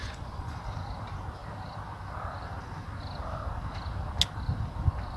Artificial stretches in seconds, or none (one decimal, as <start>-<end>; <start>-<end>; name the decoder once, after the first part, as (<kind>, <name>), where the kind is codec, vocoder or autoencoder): 0.0-0.6 (vocoder, Vocos)

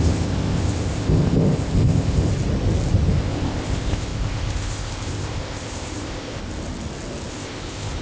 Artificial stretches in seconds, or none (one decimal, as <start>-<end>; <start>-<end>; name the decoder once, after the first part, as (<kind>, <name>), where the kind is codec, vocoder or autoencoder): 0.0-2.3 (codec, ZipCodec); 3.1-6.4; 7.3-8.0

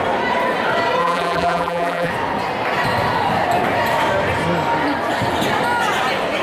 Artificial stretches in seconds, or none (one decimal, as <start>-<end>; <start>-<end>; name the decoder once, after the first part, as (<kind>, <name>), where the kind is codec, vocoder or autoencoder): 1.0-2.1 (vocoder, BigVGAN v2)

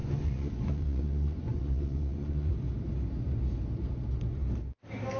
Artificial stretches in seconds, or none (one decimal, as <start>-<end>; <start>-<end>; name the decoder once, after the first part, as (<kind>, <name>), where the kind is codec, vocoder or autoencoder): 0.0-2.5 (vocoder, Vocos)

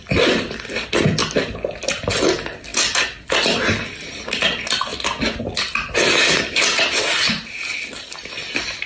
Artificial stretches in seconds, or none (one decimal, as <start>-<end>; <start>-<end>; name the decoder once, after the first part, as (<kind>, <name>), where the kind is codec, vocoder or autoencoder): none

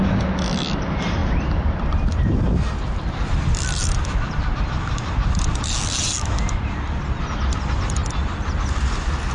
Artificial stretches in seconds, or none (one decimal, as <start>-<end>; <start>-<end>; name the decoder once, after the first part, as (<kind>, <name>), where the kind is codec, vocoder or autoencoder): 0.0-8.0 (vocoder, BigVGAN v2)

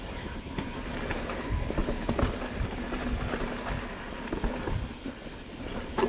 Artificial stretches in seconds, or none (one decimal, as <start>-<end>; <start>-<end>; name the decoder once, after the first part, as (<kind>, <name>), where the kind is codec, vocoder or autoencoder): 0.0-1.8 (vocoder, BigVGAN v2); 5.5-6.1